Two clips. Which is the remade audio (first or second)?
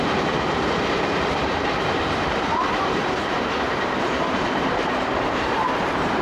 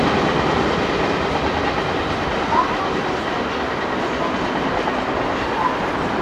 first